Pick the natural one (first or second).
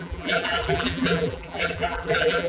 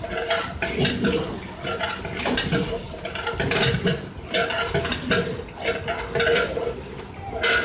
second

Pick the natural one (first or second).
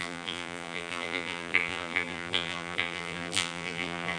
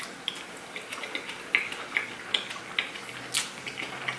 second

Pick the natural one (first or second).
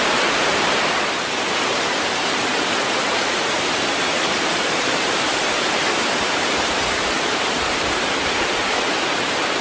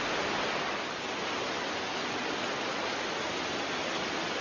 second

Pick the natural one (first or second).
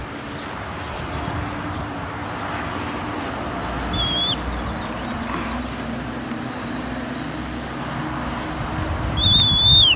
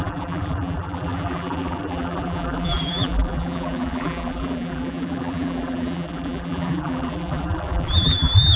first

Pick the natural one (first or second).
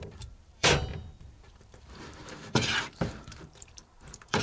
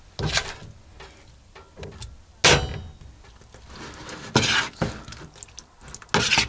second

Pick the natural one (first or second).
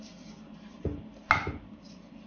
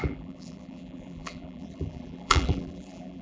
first